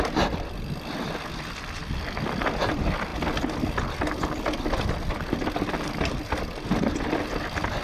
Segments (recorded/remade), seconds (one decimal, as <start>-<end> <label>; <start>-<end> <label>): 0.0-7.8 recorded